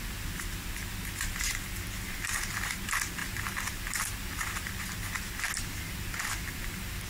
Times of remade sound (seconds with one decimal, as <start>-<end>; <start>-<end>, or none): none